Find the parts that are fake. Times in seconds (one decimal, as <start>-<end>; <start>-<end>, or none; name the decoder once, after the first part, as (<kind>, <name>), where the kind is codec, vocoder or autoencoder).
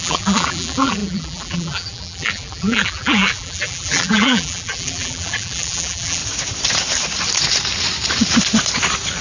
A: 0.0-6.2 (vocoder, BigVGAN v2)